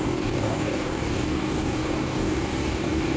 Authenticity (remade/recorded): remade